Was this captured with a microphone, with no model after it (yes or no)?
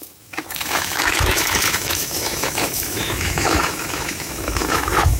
no